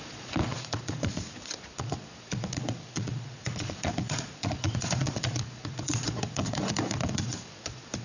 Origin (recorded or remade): remade